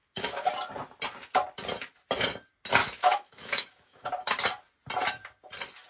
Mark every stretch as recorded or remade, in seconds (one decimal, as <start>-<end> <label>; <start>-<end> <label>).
0.0-0.5 remade; 0.5-2.8 recorded; 2.8-4.1 remade; 4.1-5.9 recorded